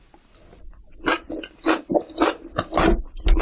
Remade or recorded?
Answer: recorded